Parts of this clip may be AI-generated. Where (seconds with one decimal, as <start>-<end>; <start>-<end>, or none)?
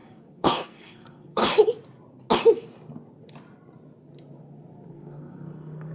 0.0-1.4; 4.9-5.9